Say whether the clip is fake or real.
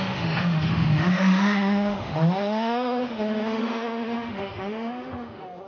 fake